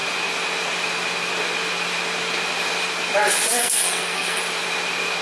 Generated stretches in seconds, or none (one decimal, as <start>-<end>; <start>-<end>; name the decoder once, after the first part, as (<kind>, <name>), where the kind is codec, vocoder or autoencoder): 3.6-4.4 (codec, SNAC)